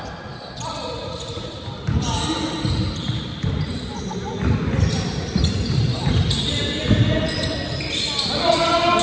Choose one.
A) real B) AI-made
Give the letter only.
A